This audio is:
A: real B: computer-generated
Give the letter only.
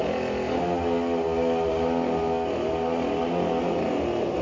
A